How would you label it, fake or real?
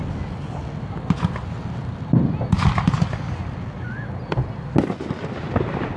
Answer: real